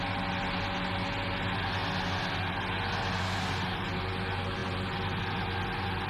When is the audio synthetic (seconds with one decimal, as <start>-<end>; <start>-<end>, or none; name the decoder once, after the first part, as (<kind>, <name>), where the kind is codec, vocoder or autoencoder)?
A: none